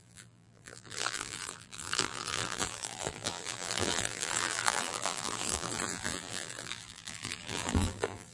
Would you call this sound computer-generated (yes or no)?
yes